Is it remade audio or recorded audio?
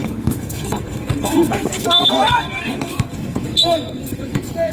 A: remade